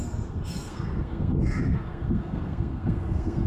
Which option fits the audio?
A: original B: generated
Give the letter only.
B